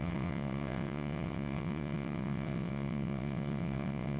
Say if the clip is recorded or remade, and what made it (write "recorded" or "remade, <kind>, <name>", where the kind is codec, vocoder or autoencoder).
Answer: remade, vocoder, WaveNeXt